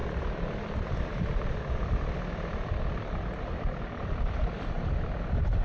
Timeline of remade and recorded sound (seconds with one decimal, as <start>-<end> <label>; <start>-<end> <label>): 0.0-5.6 recorded